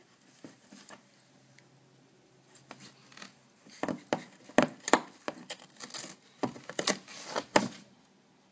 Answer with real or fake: real